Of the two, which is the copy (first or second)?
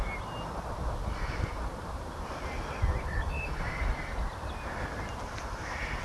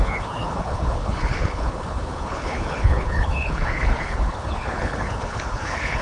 second